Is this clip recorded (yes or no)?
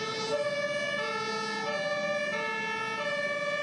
yes